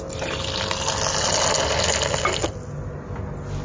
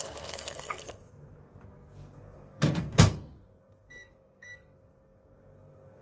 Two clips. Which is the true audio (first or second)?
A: first